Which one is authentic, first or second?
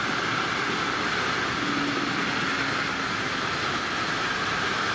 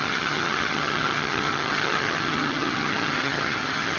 first